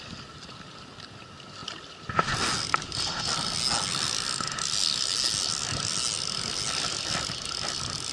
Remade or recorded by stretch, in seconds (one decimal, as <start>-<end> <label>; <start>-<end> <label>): 0.0-8.1 recorded